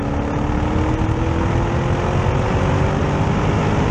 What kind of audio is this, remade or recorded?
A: recorded